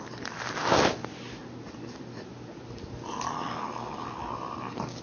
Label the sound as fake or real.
real